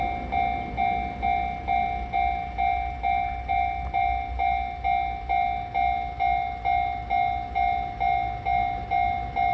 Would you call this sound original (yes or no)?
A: yes